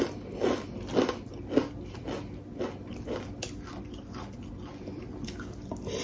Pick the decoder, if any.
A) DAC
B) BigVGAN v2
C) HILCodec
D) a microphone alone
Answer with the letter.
D